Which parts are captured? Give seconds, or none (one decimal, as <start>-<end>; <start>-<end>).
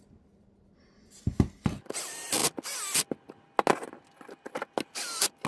0.0-5.5